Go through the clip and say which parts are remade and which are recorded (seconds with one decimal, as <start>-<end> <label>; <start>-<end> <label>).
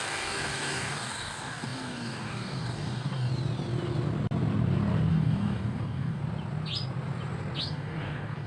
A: 0.0-3.3 remade; 3.3-5.1 recorded; 5.1-6.2 remade; 6.2-7.6 recorded; 7.6-8.5 remade